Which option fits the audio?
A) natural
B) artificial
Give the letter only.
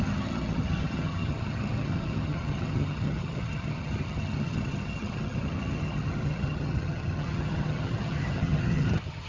B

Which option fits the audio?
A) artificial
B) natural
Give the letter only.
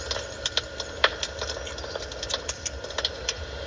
B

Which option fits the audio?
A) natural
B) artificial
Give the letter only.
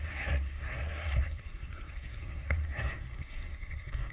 B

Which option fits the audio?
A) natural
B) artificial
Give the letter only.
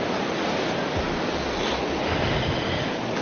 A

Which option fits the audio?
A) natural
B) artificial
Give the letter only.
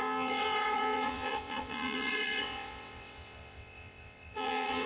B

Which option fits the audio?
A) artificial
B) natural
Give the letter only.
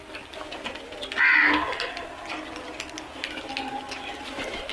B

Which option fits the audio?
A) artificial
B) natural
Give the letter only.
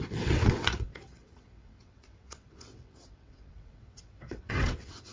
A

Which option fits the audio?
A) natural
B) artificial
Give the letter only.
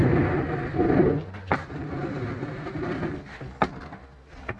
A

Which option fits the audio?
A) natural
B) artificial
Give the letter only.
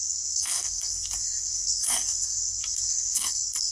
B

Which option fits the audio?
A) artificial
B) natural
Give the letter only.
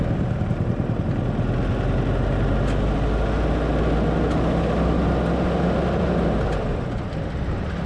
B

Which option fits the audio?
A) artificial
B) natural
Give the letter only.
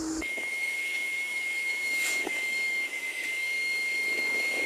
A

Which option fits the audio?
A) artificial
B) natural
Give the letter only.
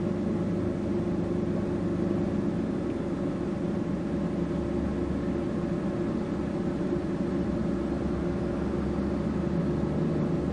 B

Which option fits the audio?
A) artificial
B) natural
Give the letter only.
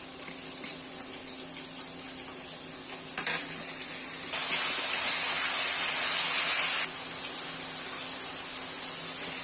B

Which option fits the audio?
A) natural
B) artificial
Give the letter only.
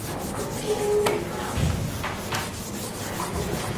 A